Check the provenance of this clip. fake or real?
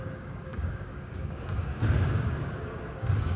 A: fake